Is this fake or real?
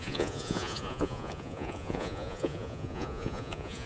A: fake